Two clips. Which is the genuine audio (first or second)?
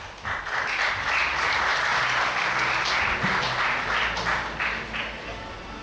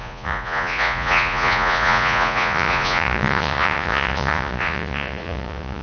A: first